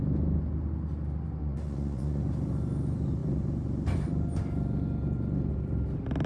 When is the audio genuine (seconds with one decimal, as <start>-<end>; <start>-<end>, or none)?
0.0-1.4; 2.2-6.3